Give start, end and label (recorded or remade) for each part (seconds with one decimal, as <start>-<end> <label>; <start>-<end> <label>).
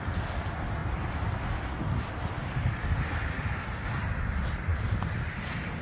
0.0-5.8 recorded